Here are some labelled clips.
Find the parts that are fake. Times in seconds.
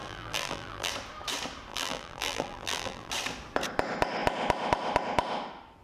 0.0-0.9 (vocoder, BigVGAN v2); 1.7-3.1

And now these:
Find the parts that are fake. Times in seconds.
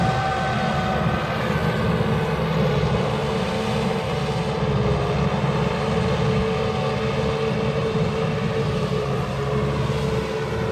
7.8-9.3 (vocoder, BigVGAN v2)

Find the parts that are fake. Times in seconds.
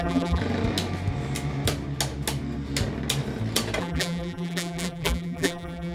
0.0-0.4 (vocoder, BigVGAN v2); 3.8-5.9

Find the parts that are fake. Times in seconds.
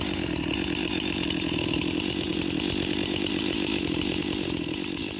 0.0-5.2 (vocoder, BigVGAN v2)